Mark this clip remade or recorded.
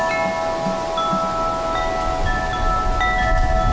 recorded